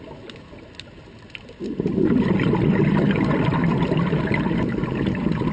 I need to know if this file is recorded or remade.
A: recorded